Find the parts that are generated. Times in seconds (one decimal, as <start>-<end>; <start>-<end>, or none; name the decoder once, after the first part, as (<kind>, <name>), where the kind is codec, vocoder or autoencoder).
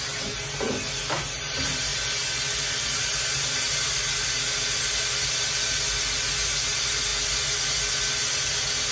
none